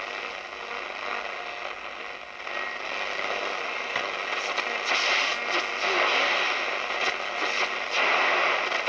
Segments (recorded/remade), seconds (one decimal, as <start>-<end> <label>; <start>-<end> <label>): 0.0-8.9 recorded